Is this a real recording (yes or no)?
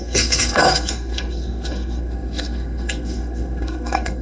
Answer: no